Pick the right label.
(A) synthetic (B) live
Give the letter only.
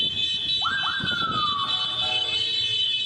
B